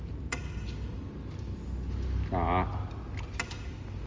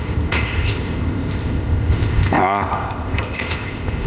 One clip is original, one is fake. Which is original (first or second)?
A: first